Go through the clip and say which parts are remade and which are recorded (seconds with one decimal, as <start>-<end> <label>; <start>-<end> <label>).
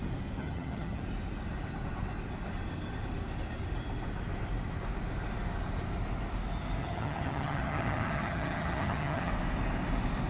0.0-0.4 recorded; 0.4-1.0 remade; 1.0-6.8 recorded; 6.8-9.3 remade; 9.3-10.3 recorded